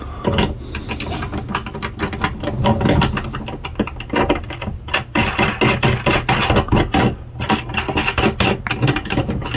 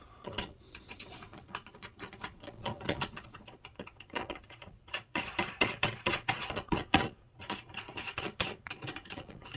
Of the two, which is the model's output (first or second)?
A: second